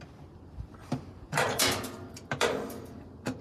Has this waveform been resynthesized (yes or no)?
yes